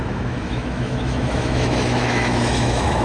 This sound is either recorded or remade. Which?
remade